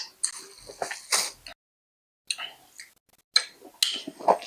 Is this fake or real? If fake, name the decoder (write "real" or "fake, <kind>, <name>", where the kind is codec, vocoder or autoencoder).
real